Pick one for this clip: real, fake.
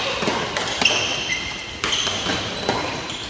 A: real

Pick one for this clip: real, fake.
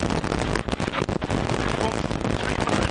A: real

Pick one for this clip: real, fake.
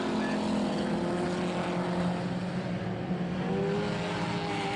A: real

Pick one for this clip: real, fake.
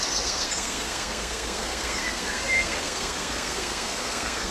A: fake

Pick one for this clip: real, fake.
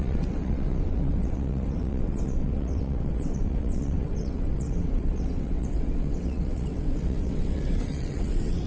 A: fake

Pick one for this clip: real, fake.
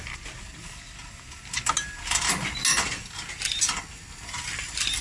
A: real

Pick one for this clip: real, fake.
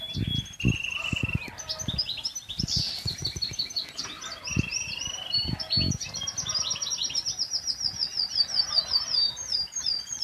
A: real